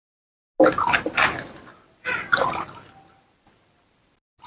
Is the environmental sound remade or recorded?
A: recorded